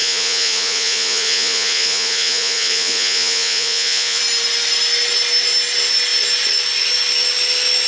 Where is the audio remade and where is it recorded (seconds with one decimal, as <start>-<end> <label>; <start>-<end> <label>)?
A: 0.0-4.2 remade; 4.2-7.9 recorded